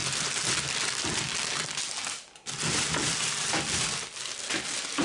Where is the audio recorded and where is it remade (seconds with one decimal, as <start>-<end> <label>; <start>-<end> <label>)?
0.0-5.0 recorded